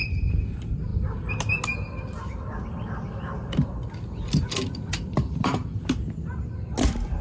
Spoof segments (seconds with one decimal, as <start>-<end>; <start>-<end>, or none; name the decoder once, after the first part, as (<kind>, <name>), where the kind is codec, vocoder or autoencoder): none